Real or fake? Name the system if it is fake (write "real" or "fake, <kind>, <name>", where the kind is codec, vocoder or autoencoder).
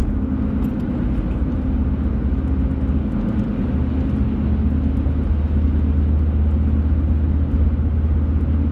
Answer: real